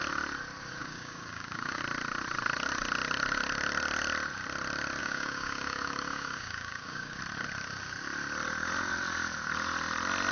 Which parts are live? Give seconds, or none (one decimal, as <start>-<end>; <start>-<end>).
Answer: 0.0-0.8; 1.8-5.0; 7.2-10.3